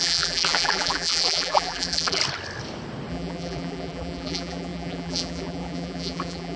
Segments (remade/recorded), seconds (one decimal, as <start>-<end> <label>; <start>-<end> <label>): 0.0-2.2 remade; 2.2-3.1 recorded; 3.1-6.6 remade